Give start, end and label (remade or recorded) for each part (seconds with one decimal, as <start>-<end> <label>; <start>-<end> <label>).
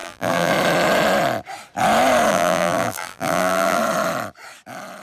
0.0-0.5 remade; 0.5-2.3 recorded; 2.3-3.8 remade; 3.8-5.0 recorded